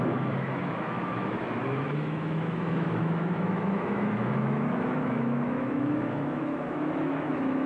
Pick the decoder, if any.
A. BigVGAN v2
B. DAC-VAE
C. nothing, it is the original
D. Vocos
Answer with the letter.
B